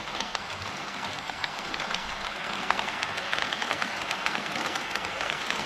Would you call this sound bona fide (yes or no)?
no